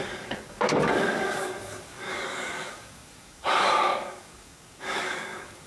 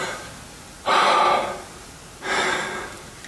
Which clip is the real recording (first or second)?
second